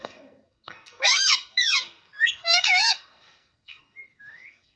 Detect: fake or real fake